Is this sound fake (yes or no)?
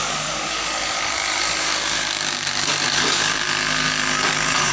yes